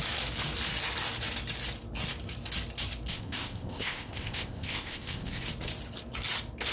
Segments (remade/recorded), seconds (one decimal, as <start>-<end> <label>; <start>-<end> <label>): 0.0-3.1 recorded; 3.1-5.4 remade; 5.4-6.7 recorded

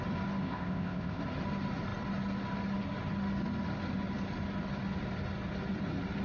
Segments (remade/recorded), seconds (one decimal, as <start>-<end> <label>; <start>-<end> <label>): 0.0-0.4 recorded; 0.4-1.2 remade; 1.2-6.2 recorded